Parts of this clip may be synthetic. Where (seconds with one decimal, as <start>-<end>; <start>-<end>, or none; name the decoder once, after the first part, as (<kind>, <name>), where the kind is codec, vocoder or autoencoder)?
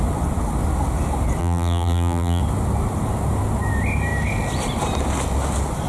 1.4-2.4 (vocoder, BigVGAN v2)